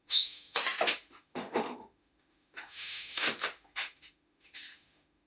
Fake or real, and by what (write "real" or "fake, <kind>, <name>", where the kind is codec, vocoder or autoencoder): fake, autoencoder, DAC-VAE